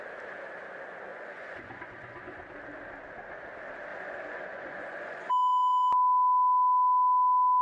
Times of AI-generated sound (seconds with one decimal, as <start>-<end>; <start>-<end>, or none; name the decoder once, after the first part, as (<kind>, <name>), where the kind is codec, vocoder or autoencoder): 1.1-2.4 (vocoder, Vocos); 3.9-5.3